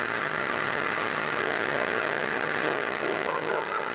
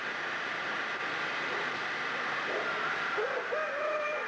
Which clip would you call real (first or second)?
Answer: second